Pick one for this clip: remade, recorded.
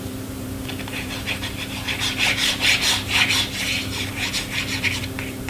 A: remade